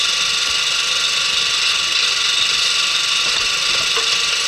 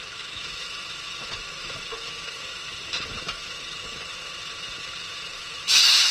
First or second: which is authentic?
first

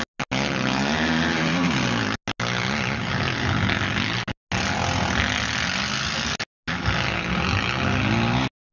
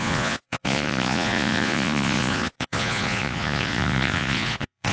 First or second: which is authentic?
first